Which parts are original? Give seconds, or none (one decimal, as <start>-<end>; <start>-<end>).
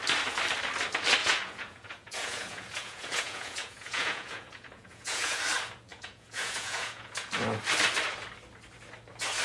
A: 0.0-1.2; 5.4-5.9; 7.3-9.4